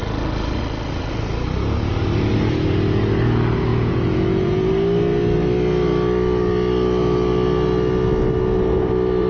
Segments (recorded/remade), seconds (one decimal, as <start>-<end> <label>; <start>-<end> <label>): 0.0-3.7 recorded; 3.7-4.7 remade; 4.7-9.3 recorded